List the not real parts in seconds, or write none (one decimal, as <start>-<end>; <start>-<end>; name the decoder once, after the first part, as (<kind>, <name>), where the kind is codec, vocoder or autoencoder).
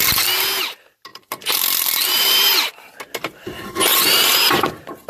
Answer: 1.1-2.9 (vocoder, BigVGAN v2); 3.9-4.5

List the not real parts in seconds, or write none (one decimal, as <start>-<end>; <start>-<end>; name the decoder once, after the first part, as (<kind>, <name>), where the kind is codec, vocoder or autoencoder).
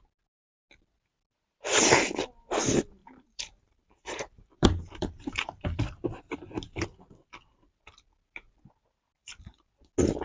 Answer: 3.0-5.8 (vocoder, BigVGAN v2); 9.2-9.7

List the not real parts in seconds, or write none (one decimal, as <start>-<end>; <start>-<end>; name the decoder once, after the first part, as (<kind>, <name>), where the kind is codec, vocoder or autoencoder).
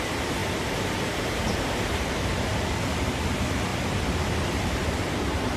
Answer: 0.0-3.7 (vocoder, BigVGAN v2); 4.5-5.6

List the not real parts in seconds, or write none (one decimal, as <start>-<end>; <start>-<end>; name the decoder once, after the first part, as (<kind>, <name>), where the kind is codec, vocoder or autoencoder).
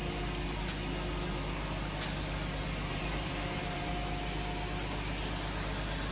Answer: 2.9-3.9 (vocoder, BigVGAN v2)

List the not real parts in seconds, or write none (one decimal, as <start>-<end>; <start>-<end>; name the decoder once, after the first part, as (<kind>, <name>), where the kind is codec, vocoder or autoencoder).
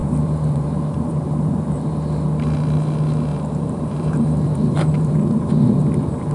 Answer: 0.0-1.9 (vocoder, BigVGAN v2); 3.3-5.5